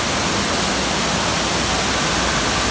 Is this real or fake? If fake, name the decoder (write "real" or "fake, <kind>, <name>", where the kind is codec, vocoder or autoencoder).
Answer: real